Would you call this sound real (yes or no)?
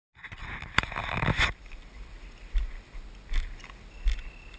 yes